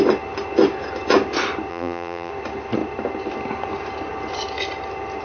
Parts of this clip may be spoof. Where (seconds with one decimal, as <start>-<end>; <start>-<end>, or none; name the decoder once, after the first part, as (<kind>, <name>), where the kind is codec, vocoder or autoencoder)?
1.7-2.3 (vocoder, BigVGAN v2)